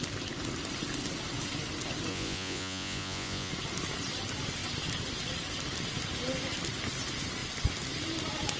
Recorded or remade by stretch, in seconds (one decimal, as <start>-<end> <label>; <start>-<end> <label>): 0.0-2.1 recorded; 2.1-3.5 remade; 3.5-8.6 recorded